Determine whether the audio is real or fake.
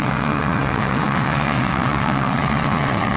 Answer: fake